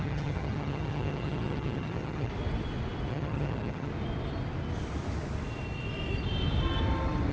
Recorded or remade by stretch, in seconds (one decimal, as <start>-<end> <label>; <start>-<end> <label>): 0.0-2.3 remade; 2.3-3.1 recorded; 3.1-3.9 remade; 3.9-7.3 recorded